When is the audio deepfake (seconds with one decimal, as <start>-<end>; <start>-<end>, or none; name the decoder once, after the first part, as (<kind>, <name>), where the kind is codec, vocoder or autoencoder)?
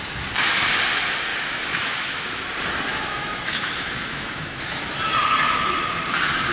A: 1.3-2.4 (autoencoder, DAC-VAE); 2.9-4.8